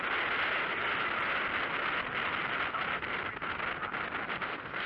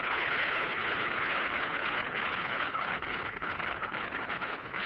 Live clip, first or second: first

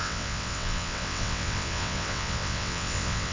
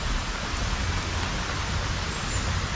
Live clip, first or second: second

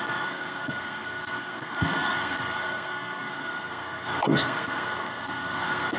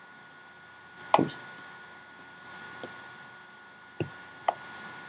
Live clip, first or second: second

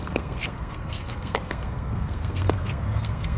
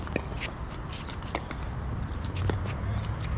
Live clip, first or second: second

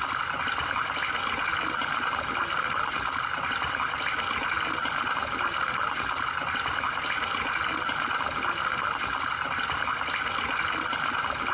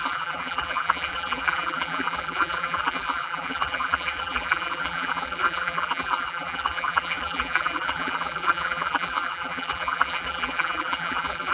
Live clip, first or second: first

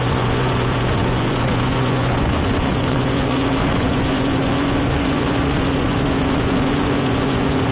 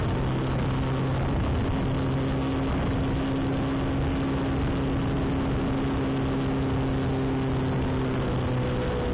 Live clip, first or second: second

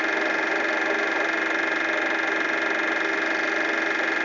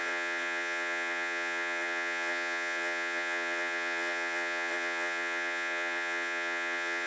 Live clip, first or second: first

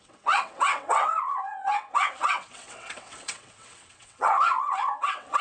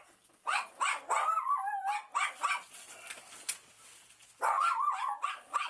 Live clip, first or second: second